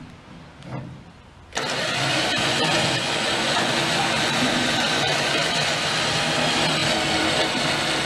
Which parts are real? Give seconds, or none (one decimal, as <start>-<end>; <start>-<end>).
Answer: 0.0-1.8; 5.9-8.1